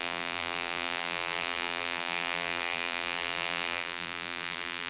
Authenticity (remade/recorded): remade